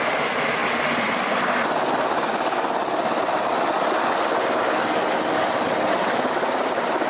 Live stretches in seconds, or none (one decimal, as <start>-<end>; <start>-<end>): 0.0-7.1